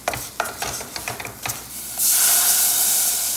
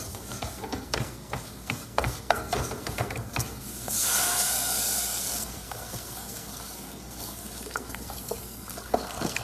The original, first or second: first